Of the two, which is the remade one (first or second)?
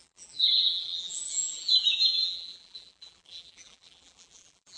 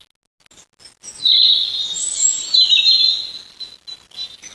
first